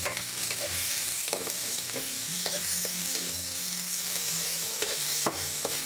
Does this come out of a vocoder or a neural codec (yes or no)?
yes